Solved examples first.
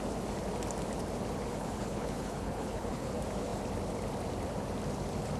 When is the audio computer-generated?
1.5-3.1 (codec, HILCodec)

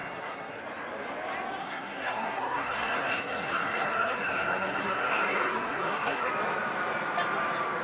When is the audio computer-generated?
0.0-0.6 (codec, SNAC); 1.6-6.3

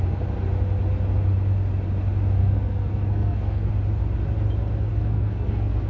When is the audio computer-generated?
2.4-3.7 (codec, SNAC); 4.9-5.9